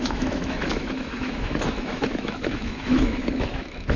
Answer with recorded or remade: remade